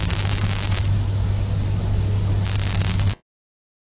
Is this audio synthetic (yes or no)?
no